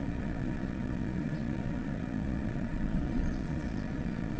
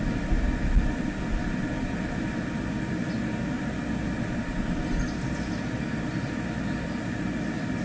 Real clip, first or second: second